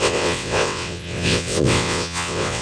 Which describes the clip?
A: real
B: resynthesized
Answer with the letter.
B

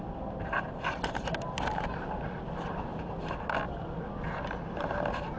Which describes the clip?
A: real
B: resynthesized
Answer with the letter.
A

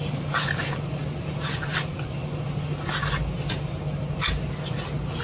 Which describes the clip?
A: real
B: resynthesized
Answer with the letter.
A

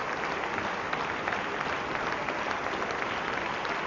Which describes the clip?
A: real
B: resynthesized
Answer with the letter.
A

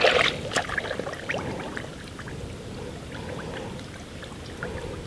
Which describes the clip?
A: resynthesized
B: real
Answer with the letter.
B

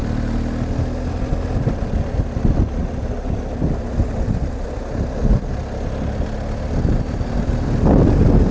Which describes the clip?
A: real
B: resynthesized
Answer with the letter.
A